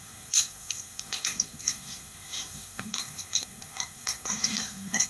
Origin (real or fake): fake